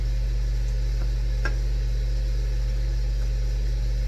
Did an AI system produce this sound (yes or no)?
no